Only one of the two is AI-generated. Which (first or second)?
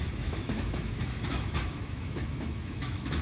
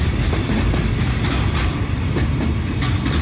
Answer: first